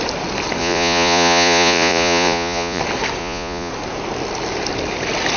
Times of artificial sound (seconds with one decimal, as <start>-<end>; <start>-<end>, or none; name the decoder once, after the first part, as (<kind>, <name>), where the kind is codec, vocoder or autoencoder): 0.6-2.8 (vocoder, Vocos); 3.2-3.7